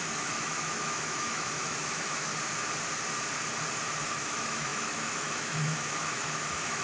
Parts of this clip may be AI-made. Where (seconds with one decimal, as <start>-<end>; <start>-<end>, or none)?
0.0-2.3; 4.2-6.8